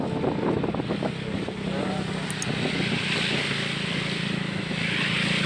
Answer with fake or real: real